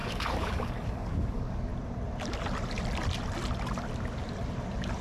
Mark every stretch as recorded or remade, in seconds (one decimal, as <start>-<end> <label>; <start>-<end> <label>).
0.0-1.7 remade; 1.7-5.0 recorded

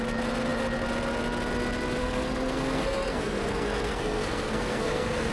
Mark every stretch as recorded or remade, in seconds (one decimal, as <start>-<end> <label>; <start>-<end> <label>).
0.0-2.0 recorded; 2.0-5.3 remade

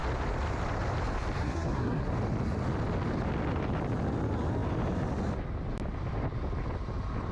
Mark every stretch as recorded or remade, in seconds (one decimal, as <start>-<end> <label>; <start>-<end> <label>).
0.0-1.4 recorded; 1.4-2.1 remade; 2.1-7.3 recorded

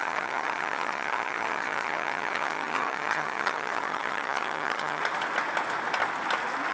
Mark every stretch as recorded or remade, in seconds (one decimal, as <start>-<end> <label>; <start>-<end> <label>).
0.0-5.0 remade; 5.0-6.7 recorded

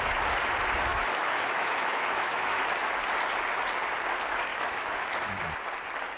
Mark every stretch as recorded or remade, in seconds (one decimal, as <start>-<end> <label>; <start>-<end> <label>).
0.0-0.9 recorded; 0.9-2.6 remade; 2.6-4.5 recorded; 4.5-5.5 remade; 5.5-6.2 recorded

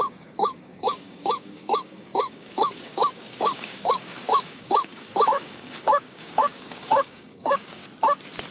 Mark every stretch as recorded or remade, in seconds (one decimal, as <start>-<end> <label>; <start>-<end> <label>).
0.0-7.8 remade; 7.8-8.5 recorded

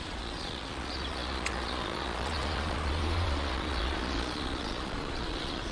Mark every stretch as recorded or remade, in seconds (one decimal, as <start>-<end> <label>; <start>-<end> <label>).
0.0-5.7 remade